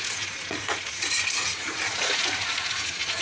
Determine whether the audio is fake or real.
fake